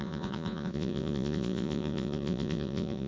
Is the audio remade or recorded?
remade